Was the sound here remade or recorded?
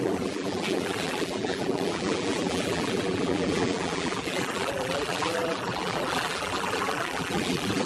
remade